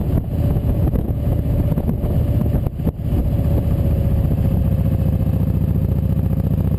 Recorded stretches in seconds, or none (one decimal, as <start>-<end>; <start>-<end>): 1.2-6.8